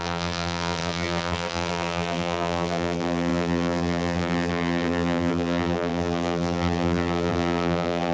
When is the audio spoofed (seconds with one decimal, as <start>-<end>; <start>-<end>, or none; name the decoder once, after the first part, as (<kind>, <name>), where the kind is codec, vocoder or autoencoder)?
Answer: 0.0-8.1 (vocoder, BigVGAN v2)